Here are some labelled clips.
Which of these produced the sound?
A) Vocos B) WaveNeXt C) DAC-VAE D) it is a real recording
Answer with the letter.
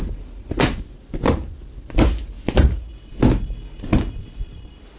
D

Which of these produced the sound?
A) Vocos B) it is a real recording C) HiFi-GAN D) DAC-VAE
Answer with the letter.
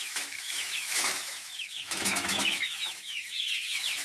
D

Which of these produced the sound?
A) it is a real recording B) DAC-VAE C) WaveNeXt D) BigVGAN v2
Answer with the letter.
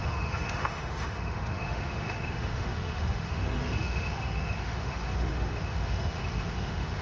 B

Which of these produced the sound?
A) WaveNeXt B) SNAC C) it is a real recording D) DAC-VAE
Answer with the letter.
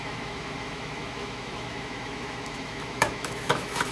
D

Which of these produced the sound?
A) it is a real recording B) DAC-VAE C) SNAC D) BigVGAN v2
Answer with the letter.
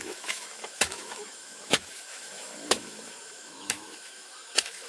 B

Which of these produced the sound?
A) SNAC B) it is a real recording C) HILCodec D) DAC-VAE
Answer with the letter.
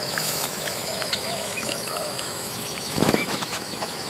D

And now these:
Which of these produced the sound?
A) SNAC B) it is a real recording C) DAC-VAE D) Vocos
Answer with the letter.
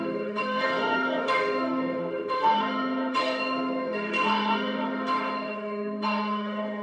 C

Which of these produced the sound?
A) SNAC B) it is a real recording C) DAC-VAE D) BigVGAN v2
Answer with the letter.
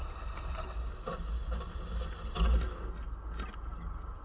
B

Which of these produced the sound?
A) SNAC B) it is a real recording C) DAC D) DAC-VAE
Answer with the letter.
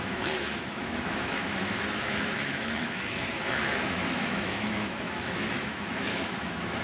D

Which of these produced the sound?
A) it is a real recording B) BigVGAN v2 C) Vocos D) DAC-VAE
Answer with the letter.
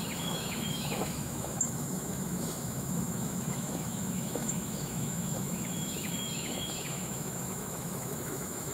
D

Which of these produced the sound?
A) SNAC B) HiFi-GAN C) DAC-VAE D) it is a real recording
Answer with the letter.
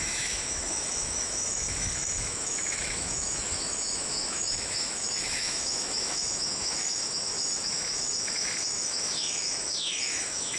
C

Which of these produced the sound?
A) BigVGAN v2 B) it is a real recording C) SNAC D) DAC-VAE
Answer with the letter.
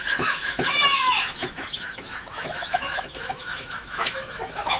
D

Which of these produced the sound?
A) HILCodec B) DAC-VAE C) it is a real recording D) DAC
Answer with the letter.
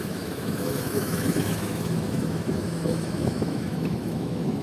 B